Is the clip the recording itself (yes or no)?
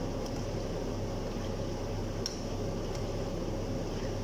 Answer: yes